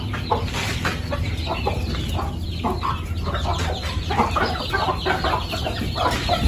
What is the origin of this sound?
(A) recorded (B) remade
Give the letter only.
A